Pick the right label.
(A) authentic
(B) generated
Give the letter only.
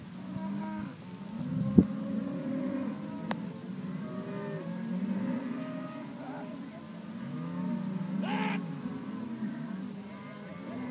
A